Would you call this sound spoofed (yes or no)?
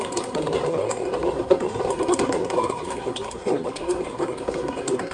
yes